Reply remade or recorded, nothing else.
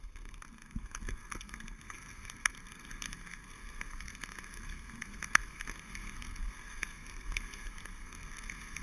remade